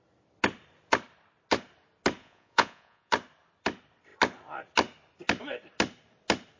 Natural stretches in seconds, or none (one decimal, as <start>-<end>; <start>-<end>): 0.0-2.2; 3.1-6.6